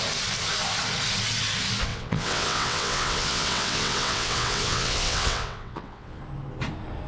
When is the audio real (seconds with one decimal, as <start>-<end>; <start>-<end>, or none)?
0.0-1.9; 6.2-7.1